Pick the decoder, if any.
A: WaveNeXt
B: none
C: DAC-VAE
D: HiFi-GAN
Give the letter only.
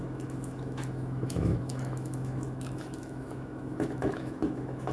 C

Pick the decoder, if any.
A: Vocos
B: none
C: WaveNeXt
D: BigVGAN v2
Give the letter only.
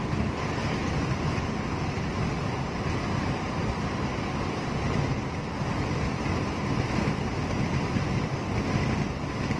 B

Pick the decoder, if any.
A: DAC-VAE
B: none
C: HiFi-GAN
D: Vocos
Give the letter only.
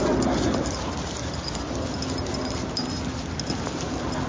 B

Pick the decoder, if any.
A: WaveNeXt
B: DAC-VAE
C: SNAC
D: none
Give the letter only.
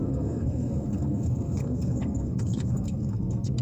C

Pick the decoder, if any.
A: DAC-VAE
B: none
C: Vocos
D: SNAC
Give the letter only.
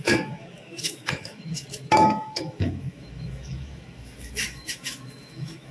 A